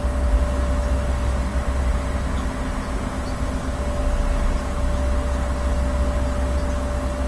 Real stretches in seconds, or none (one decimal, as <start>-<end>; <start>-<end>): 0.0-7.3